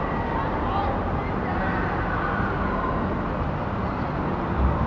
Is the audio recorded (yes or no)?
yes